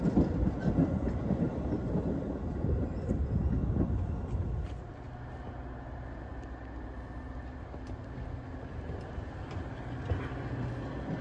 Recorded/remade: recorded